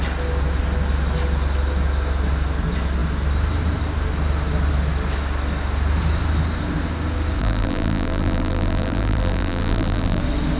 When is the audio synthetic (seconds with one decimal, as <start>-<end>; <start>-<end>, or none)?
7.4-10.2